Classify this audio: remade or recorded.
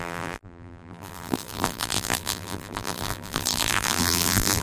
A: remade